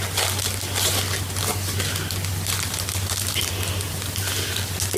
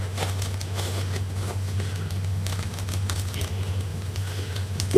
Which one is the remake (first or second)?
second